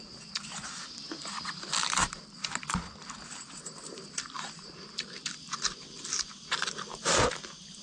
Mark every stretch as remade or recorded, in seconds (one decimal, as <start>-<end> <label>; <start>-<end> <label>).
0.0-7.8 recorded